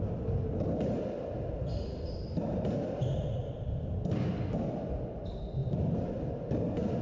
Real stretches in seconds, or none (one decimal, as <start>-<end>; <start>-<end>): 0.0-3.4; 3.9-5.6; 6.6-7.0